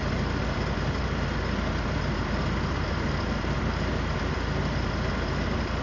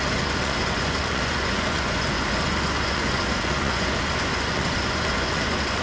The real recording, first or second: first